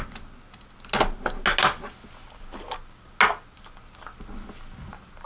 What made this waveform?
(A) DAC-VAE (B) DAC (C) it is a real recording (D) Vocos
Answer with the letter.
C